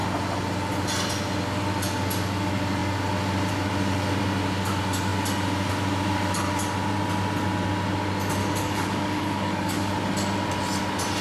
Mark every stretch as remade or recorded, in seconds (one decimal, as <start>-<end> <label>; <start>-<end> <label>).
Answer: 0.0-8.4 recorded; 8.4-9.9 remade; 9.9-11.2 recorded